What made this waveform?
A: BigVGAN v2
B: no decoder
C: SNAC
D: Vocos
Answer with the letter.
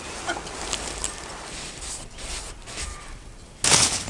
B